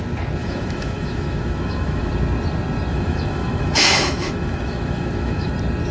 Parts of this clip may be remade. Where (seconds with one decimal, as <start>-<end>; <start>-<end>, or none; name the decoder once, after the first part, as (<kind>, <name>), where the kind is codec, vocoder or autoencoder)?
0.4-2.1 (autoencoder, DAC-VAE); 2.9-5.5